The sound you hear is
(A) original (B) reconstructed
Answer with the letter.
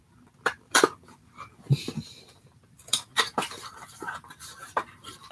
B